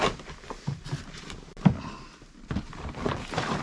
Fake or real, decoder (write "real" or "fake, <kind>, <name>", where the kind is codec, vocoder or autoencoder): real